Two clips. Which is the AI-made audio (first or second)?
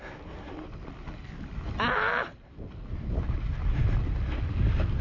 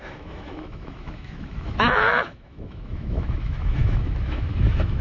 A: second